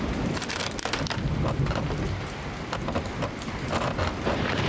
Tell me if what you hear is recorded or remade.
recorded